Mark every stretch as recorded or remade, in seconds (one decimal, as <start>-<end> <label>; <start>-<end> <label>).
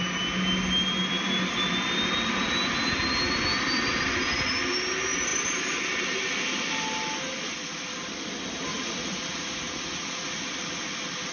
0.0-8.7 recorded; 8.7-10.4 remade; 10.4-11.3 recorded